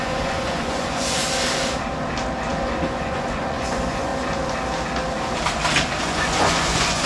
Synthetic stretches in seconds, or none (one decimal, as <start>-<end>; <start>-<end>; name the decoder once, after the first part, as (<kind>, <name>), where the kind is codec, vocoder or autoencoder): 0.0-1.2 (vocoder, Vocos); 2.5-4.1; 6.0-7.1